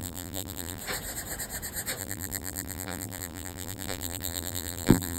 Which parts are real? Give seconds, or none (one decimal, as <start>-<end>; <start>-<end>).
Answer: 0.8-2.0